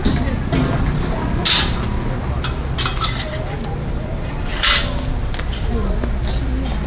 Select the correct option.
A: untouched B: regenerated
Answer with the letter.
A